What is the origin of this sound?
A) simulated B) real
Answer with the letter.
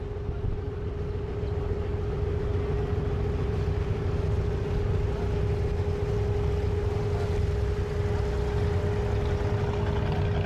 B